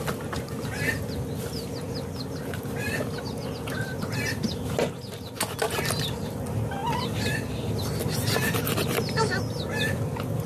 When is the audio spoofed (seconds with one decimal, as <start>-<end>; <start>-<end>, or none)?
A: none